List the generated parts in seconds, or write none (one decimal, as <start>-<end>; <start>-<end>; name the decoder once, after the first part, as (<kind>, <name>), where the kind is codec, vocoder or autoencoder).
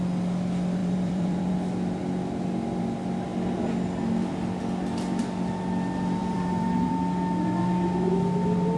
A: 0.8-1.5 (vocoder, BigVGAN v2); 6.2-6.9